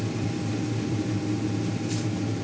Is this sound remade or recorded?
remade